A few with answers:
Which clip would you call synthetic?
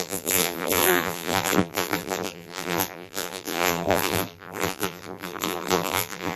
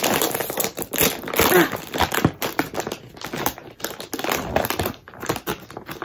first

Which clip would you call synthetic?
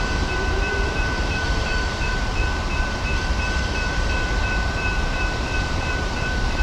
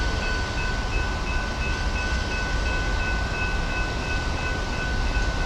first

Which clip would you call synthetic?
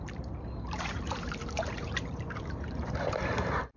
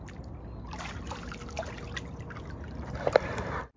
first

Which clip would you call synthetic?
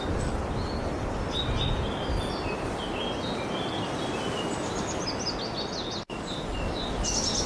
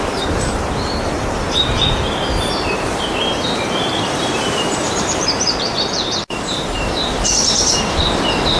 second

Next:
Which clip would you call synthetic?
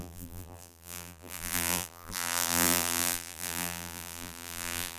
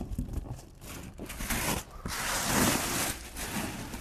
first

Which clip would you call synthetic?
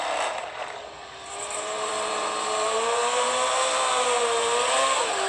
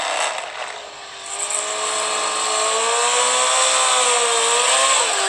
first